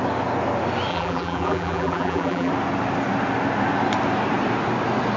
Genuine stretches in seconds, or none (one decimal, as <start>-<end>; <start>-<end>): 0.0-0.9; 2.5-5.2